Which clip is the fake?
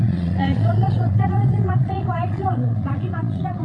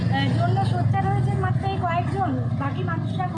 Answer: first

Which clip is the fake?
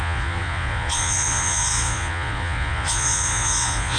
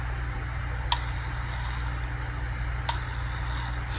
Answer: first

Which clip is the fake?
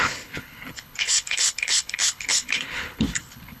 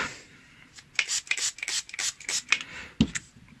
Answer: first